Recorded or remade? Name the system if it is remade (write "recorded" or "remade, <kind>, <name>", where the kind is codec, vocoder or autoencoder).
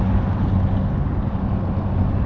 recorded